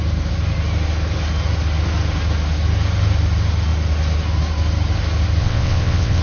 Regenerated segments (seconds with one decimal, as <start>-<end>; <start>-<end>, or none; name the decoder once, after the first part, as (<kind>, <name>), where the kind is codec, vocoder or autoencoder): 5.4-6.2 (vocoder, WaveNeXt)